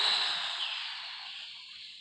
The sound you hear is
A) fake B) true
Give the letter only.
B